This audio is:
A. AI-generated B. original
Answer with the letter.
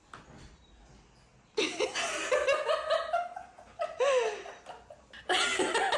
B